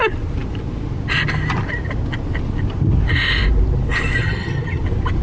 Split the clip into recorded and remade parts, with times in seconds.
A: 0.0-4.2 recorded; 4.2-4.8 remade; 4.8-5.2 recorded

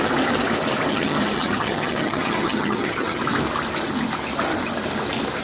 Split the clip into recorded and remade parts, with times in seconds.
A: 0.0-0.9 recorded; 0.9-3.2 remade; 3.2-5.4 recorded

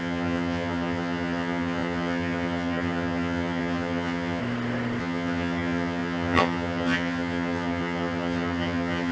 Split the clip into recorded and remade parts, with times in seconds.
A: 0.0-4.4 remade; 4.4-5.0 recorded; 5.0-9.1 remade

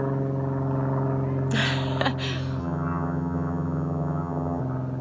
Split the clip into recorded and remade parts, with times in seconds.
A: 0.0-2.6 recorded; 2.6-4.6 remade; 4.6-5.0 recorded

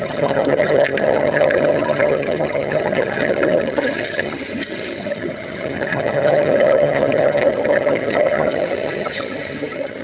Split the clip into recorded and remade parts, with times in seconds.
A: 0.0-10.0 remade